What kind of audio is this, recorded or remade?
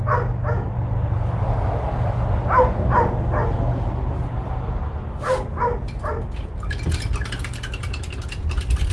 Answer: recorded